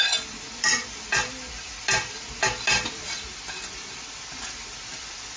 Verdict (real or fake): real